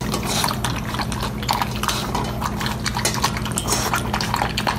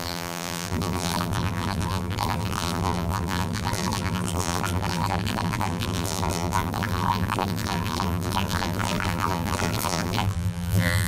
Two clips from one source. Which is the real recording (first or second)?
first